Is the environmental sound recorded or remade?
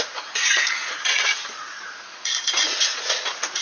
remade